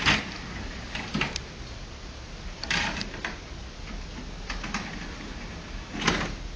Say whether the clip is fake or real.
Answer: real